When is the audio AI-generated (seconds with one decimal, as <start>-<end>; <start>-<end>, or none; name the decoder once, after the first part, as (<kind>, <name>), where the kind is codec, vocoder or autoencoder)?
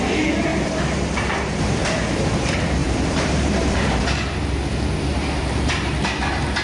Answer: 0.5-2.1 (vocoder, BigVGAN v2); 2.8-4.0; 5.1-5.9